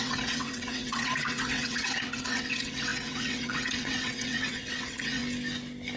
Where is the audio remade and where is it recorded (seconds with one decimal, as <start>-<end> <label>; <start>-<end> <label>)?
0.0-5.2 remade; 5.2-6.0 recorded